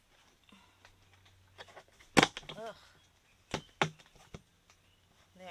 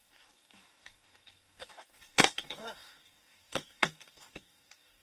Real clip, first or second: first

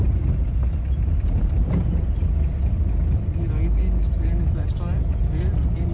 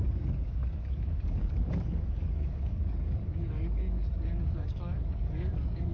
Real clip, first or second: first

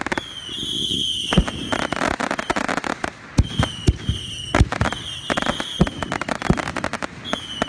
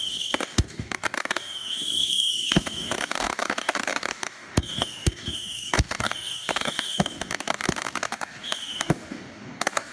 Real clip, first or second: first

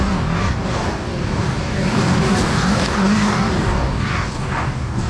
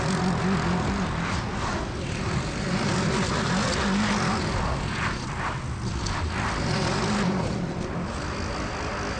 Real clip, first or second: second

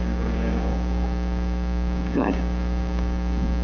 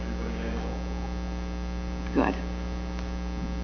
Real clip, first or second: second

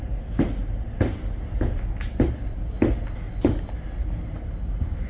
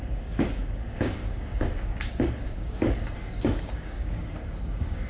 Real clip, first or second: first